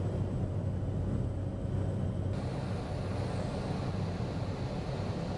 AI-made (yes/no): no